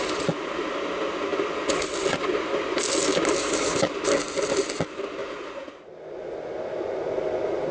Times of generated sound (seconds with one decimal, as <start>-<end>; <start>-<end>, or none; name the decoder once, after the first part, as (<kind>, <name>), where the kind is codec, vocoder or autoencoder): 5.2-5.8 (vocoder, Vocos)